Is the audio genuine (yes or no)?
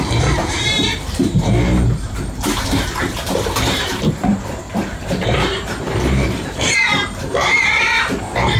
no